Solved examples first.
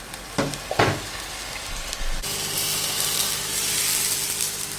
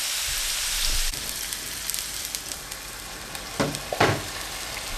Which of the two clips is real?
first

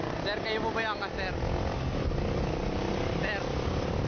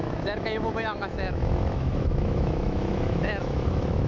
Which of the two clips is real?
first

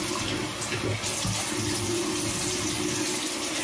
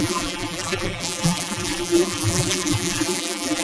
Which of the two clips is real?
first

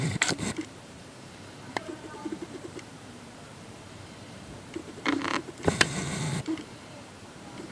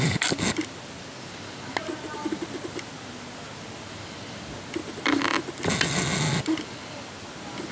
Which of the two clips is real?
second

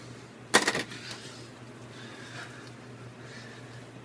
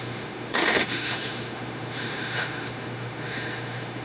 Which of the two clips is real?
first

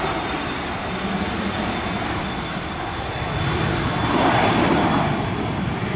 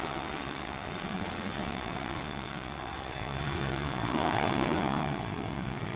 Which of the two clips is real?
first